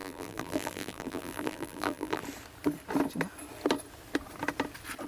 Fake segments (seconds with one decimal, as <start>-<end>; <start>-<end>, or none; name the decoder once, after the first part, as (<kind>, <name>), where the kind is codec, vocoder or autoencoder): 0.0-2.2 (vocoder, BigVGAN v2)